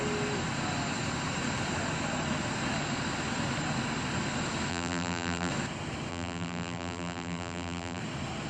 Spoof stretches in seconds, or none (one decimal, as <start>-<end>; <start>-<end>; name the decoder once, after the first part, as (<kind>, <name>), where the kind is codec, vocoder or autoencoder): 4.7-5.5 (vocoder, BigVGAN v2); 6.1-8.0